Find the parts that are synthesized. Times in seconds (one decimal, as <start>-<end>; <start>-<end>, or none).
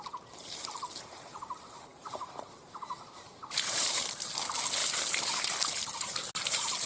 0.0-6.9